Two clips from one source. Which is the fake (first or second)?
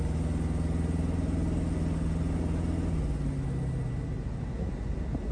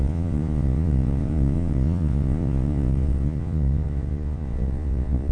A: second